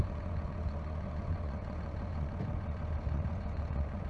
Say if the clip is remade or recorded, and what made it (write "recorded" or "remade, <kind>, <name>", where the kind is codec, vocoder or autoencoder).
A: remade, vocoder, Vocos